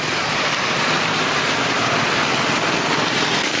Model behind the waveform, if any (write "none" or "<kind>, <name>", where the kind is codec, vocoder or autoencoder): vocoder, BigVGAN v2